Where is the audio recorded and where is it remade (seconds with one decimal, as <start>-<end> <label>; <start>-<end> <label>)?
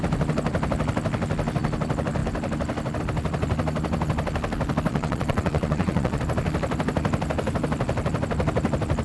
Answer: 0.0-4.9 recorded; 4.9-6.2 remade; 6.2-9.0 recorded